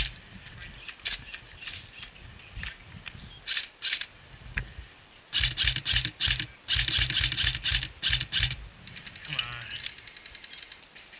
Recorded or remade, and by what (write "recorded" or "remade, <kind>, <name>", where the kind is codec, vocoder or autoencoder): recorded